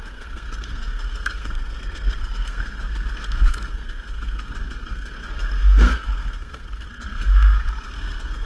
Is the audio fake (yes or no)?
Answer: yes